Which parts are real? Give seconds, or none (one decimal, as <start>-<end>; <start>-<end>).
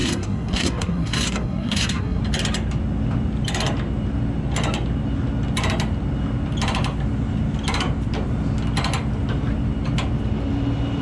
2.2-11.0